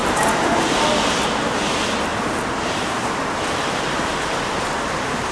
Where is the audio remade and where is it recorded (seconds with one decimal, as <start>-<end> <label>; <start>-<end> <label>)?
0.0-0.8 remade; 0.8-2.1 recorded; 2.1-2.9 remade; 2.9-5.3 recorded